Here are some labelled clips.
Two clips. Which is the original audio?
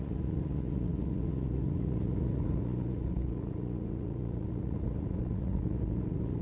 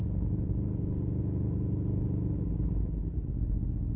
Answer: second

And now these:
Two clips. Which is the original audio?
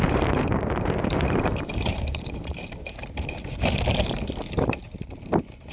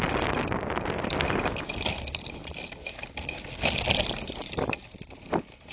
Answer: second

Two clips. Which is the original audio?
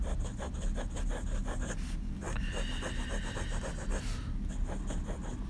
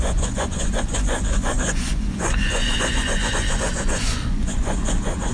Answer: first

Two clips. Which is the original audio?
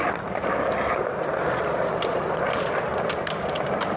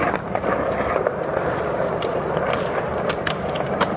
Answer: first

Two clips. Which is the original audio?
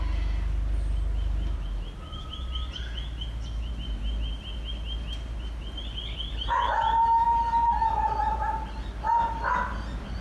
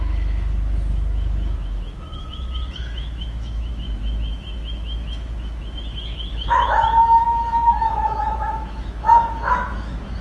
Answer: first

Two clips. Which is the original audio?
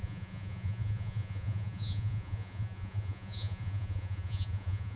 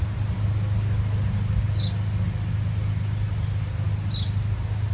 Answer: second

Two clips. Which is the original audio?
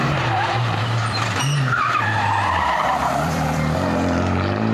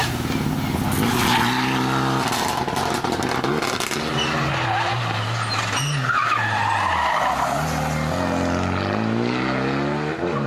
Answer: second